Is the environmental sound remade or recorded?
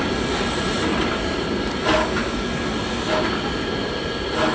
recorded